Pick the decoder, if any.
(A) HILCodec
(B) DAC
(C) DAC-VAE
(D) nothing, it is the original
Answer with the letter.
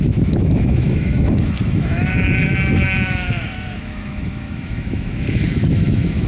C